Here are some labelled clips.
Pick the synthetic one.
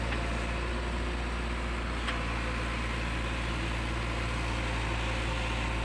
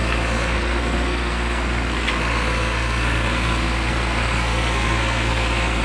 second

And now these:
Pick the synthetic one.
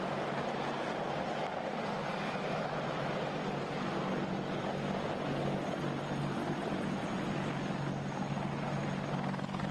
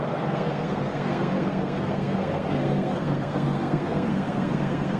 second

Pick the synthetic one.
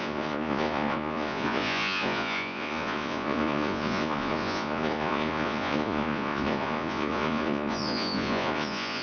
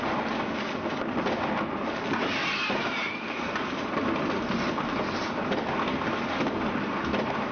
first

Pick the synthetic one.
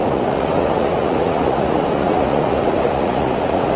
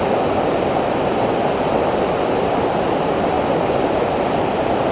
first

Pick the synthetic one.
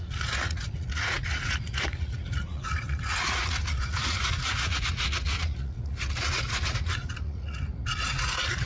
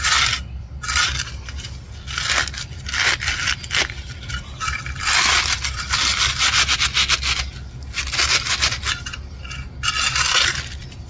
first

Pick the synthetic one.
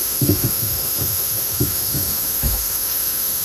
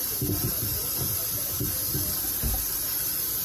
first